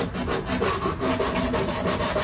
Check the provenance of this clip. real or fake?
real